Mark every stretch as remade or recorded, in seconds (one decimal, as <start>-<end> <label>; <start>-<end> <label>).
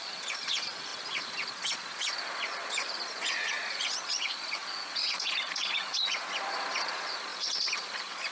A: 0.0-8.3 remade